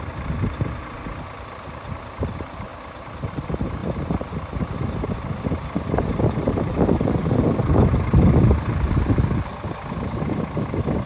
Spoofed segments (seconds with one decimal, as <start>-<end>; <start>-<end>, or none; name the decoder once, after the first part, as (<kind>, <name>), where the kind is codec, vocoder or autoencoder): 0.0-3.8 (vocoder, BigVGAN v2); 7.6-11.1